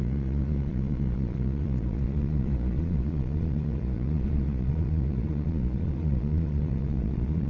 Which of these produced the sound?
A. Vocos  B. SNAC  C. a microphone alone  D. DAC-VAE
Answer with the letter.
A